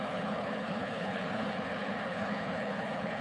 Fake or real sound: fake